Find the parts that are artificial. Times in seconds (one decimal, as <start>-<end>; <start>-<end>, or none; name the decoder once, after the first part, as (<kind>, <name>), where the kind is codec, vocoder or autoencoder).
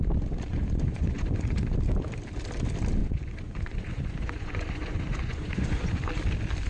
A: 0.5-1.6 (vocoder, Vocos); 3.0-5.9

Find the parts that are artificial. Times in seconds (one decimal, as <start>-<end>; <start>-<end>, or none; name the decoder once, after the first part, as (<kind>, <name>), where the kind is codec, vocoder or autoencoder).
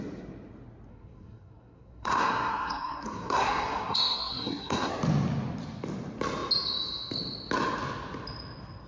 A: 0.9-4.9 (codec, SNAC)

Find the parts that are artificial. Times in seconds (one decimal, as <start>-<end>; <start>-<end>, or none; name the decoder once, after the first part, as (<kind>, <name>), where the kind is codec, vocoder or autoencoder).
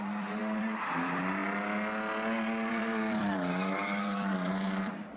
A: 0.0-1.4 (vocoder, BigVGAN v2); 2.7-5.2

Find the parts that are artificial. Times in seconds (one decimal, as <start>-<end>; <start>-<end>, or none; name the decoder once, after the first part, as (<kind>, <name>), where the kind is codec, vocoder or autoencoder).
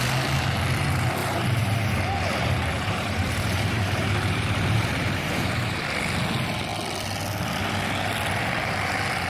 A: 1.2-5.8 (vocoder, BigVGAN v2)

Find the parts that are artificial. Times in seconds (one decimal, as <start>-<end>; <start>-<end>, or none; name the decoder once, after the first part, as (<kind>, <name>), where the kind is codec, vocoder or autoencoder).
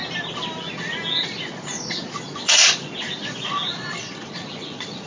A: 1.2-5.1 (vocoder, Vocos)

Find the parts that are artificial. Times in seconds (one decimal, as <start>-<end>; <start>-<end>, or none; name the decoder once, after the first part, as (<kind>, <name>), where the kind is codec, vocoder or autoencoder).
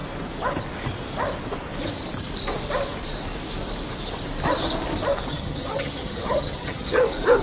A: 5.3-7.0 (vocoder, HiFi-GAN)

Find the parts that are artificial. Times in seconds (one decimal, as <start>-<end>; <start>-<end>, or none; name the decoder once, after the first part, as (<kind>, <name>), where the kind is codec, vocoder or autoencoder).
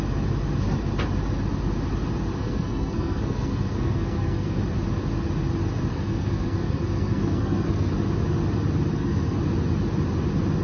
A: 2.4-4.6 (codec, SNAC); 5.9-7.9; 8.9-9.4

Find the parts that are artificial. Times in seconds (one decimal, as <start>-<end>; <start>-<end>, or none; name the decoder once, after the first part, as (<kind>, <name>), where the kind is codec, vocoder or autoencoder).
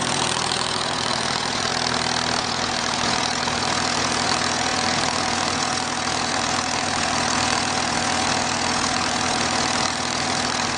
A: 0.0-1.7 (vocoder, Vocos); 2.4-10.8